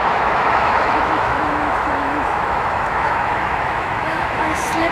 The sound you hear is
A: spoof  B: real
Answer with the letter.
A